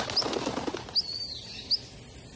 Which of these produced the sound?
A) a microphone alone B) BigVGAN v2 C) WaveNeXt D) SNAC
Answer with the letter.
A